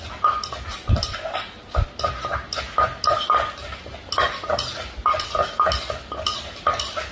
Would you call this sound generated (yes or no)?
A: no